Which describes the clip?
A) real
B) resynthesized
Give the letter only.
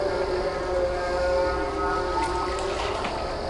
A